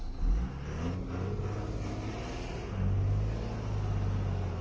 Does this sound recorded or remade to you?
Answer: recorded